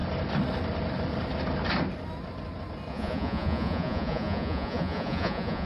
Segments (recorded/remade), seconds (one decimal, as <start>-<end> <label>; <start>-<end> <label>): 0.0-2.9 recorded; 2.9-5.7 remade